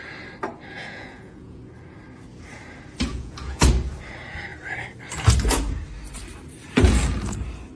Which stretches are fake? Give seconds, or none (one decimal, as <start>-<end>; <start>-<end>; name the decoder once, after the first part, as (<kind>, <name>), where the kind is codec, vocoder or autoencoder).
0.8-1.6 (vocoder, Vocos); 3.1-3.7